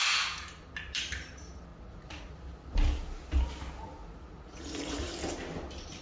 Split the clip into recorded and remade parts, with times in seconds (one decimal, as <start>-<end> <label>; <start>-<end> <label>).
0.0-1.7 recorded; 1.7-2.3 remade; 2.3-4.0 recorded; 4.0-5.1 remade; 5.1-6.0 recorded